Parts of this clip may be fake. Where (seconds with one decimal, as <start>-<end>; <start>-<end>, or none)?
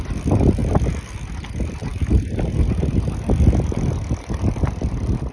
none